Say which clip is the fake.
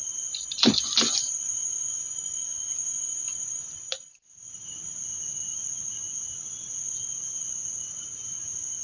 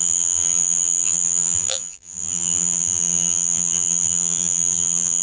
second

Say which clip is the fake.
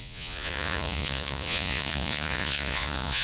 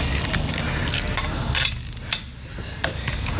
first